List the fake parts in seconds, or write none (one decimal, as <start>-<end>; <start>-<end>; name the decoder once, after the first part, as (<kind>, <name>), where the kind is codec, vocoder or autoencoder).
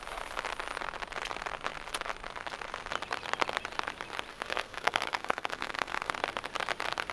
4.3-6.1 (codec, SNAC)